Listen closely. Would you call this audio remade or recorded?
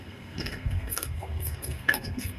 remade